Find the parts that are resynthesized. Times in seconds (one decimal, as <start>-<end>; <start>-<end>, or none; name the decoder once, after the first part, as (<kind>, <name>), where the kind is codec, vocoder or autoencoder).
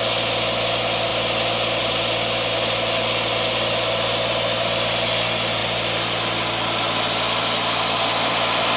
none